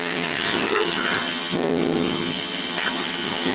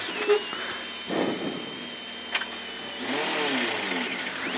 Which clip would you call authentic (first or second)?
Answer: second